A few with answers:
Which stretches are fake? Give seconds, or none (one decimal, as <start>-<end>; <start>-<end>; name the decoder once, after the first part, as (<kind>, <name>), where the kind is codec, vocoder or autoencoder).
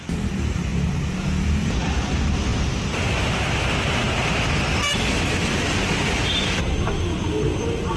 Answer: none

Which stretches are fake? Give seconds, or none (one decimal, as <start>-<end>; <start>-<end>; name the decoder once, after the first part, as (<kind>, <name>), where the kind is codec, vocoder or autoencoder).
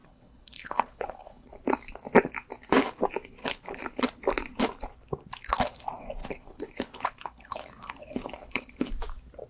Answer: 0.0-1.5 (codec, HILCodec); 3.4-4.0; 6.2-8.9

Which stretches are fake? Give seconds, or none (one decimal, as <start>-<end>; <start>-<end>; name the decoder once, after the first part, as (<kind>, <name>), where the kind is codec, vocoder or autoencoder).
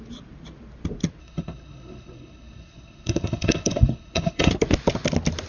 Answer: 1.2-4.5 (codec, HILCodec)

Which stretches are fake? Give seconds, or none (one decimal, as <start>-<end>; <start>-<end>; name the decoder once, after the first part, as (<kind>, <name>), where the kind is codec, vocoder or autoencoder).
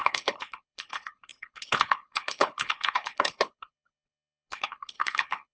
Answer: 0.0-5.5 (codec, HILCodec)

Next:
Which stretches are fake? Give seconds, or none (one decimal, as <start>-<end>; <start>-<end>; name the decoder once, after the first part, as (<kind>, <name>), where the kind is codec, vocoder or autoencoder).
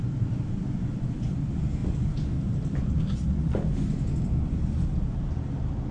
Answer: none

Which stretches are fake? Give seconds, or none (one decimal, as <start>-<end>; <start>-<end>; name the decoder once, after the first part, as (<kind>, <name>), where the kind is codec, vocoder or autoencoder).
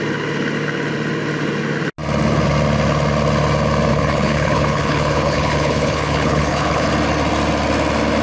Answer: 3.9-6.9 (codec, HILCodec)